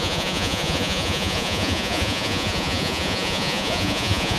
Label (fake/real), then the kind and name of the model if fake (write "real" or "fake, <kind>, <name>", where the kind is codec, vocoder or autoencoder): fake, vocoder, Vocos